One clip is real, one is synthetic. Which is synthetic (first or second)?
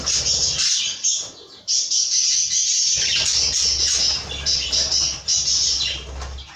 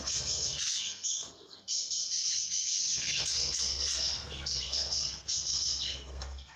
second